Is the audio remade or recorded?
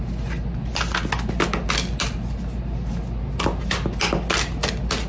recorded